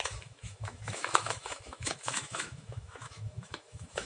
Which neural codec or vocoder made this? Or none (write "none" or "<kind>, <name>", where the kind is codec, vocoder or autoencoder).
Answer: autoencoder, DAC-VAE